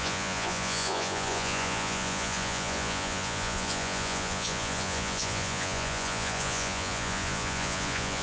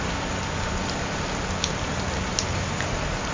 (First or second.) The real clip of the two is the second